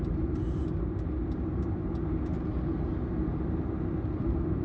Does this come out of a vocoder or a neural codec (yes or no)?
no